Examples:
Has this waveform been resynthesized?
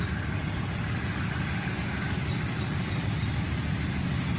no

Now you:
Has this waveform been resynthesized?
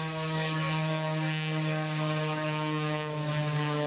yes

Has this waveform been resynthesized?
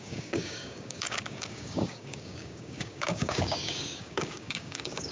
yes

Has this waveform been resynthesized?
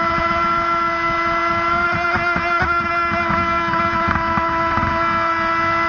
no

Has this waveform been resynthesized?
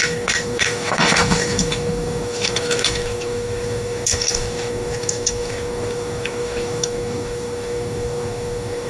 yes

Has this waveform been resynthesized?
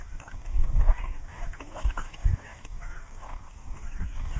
yes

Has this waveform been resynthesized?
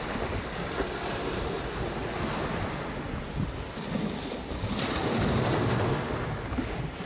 no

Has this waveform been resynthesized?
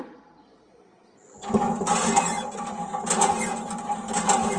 no